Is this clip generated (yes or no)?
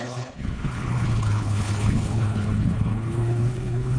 yes